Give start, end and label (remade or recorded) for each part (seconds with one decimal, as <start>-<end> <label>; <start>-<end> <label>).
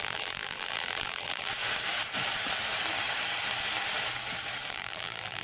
0.0-1.5 remade; 1.5-4.7 recorded; 4.7-5.4 remade